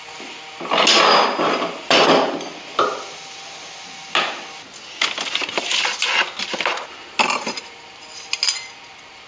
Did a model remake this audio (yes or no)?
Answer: no